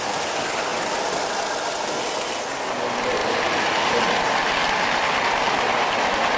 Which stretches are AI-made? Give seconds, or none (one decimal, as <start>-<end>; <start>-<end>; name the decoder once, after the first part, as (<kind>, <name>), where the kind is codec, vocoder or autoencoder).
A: none